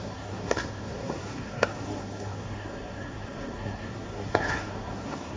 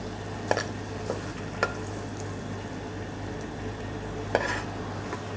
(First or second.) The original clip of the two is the second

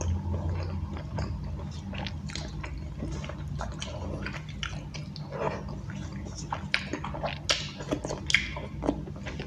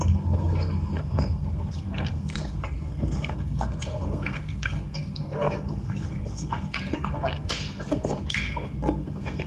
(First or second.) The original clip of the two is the first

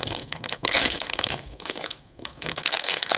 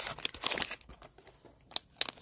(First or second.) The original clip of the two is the second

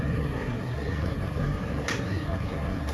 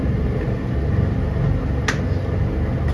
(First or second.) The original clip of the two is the second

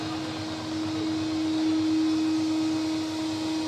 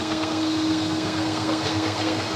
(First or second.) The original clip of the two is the first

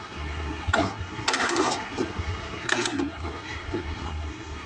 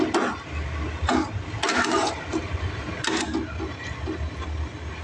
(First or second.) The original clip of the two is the second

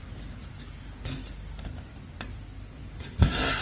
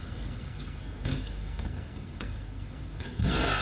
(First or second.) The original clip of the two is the first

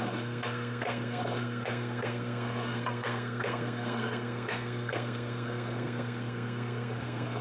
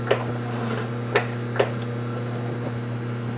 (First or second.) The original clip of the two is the second